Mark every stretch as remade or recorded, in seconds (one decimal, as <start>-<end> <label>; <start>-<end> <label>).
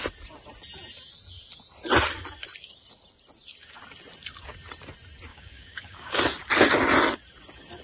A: 0.0-5.3 recorded; 5.3-6.2 remade; 6.2-7.8 recorded